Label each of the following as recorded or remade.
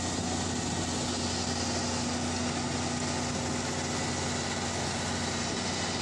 recorded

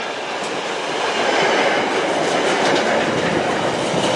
recorded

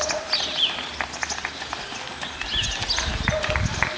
recorded